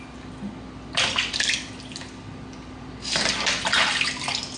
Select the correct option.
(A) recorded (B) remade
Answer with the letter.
A